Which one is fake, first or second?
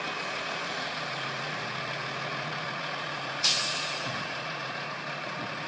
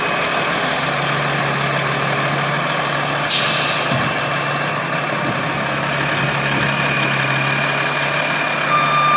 first